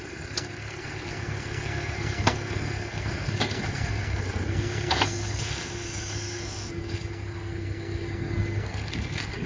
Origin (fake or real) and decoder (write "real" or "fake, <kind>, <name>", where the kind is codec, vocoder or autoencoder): fake, codec, SNAC